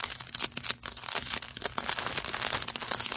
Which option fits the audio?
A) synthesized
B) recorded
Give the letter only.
B